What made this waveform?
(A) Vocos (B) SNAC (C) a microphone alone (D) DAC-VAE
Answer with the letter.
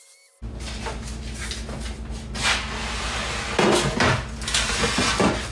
C